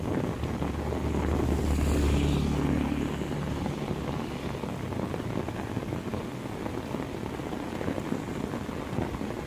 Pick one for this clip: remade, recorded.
recorded